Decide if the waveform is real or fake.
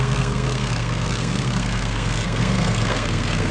fake